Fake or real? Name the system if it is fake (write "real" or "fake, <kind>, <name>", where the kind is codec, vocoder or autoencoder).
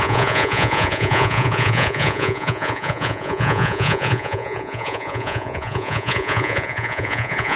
fake, vocoder, Vocos